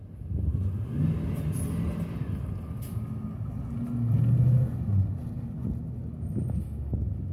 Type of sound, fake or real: real